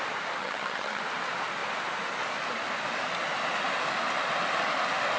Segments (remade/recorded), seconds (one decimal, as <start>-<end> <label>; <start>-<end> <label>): 0.0-0.4 recorded; 0.4-1.0 remade; 1.0-5.2 recorded